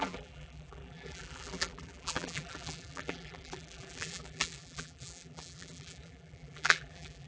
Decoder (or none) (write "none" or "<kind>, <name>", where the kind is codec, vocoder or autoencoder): vocoder, BigVGAN v2